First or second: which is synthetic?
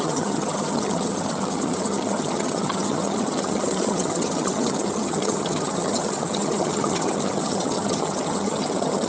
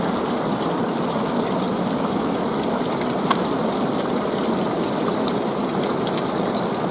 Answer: first